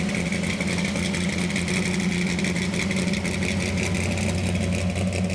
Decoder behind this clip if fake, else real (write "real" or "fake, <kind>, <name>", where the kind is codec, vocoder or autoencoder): real